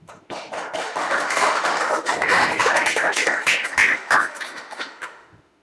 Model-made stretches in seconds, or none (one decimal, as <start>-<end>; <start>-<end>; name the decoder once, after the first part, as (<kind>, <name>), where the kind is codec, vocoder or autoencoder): 0.0-5.6 (autoencoder, DAC-VAE)

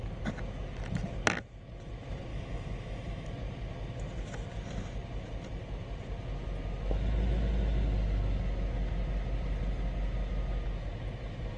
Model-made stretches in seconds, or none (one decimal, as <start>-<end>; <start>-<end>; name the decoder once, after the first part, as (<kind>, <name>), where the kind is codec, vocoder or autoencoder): 2.3-3.3 (autoencoder, DAC-VAE)

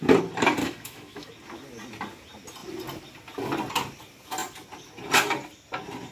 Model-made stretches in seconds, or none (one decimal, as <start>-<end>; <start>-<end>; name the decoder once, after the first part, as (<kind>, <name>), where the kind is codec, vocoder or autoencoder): 0.6-1.3 (autoencoder, DAC-VAE)

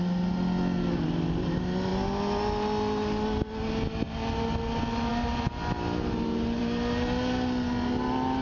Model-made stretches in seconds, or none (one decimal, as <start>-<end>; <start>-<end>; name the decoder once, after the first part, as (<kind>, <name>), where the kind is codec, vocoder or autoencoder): none

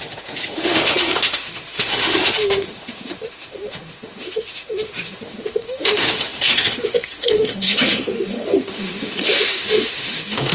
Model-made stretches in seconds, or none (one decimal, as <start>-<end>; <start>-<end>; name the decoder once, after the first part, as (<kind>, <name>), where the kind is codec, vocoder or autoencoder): 0.0-10.5 (autoencoder, DAC-VAE)

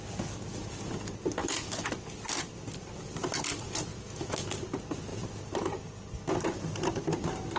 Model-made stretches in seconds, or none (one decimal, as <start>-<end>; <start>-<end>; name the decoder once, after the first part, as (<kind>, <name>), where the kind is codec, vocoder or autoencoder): 1.4-1.9 (autoencoder, DAC-VAE); 3.9-4.5